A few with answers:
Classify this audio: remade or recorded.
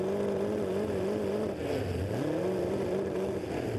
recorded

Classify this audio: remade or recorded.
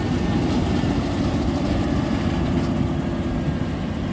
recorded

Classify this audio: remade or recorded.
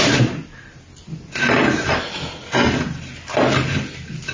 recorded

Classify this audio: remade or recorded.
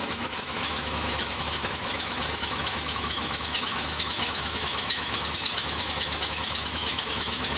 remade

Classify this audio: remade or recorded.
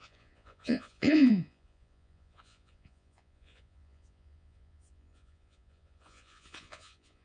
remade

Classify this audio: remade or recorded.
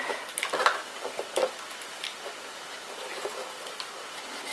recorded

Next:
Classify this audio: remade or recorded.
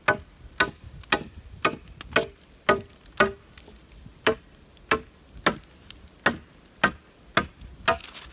recorded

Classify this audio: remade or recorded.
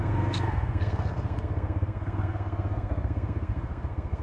remade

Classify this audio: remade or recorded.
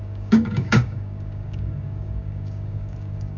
remade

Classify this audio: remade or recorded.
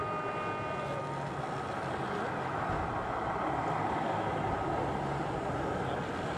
recorded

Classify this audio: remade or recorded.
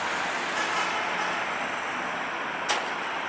recorded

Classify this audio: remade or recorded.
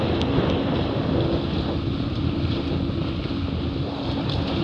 recorded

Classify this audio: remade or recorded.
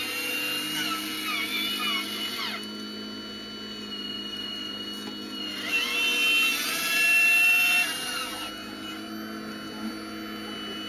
recorded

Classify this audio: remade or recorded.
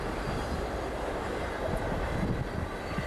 recorded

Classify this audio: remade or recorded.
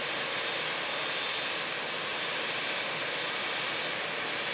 recorded